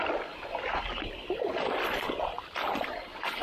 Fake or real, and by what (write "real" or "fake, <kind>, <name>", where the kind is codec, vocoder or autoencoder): real